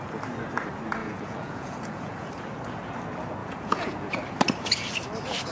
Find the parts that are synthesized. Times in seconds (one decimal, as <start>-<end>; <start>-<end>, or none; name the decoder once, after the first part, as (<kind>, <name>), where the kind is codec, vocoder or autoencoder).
1.0-2.3 (vocoder, Vocos); 3.4-4.2